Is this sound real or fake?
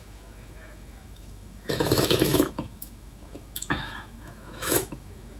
fake